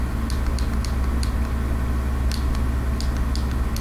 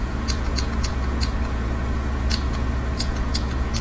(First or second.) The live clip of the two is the first